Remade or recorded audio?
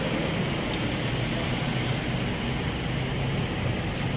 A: recorded